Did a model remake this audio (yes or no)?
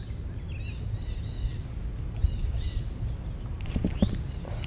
no